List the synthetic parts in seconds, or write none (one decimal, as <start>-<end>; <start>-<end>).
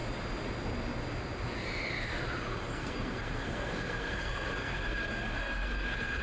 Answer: 2.7-6.2